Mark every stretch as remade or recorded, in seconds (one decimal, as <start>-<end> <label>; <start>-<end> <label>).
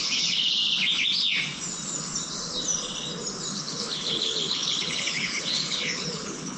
0.0-0.6 remade; 0.6-3.6 recorded; 3.6-6.6 remade